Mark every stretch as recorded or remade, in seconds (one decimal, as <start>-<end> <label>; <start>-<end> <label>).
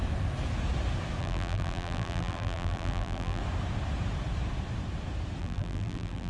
0.0-1.2 recorded; 1.2-3.4 remade; 3.4-5.4 recorded; 5.4-6.3 remade